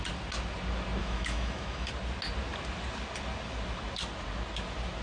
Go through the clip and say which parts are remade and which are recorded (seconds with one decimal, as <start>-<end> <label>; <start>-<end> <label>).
0.0-1.0 recorded; 1.0-1.9 remade; 1.9-5.0 recorded

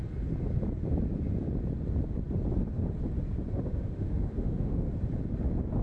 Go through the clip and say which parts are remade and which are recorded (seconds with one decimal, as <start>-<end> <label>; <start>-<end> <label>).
0.0-3.5 recorded; 3.5-4.9 remade; 4.9-5.8 recorded

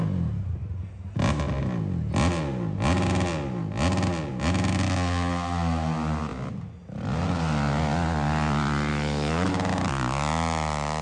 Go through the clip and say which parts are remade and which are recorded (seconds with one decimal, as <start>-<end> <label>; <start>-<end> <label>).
0.0-8.9 recorded; 8.9-9.5 remade; 9.5-11.0 recorded

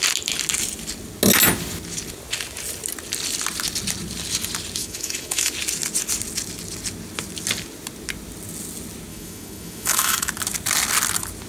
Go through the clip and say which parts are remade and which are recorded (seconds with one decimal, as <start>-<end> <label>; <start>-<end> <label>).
0.0-4.8 recorded; 4.8-5.5 remade; 5.5-9.1 recorded; 9.1-10.3 remade; 10.3-11.5 recorded

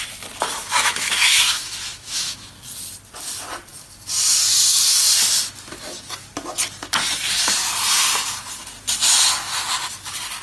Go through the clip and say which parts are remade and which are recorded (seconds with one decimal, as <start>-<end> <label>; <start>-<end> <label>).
0.0-0.6 recorded; 0.6-2.5 remade; 2.5-10.4 recorded